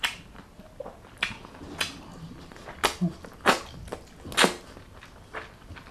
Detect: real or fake real